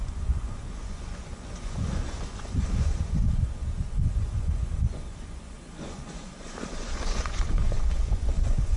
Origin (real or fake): fake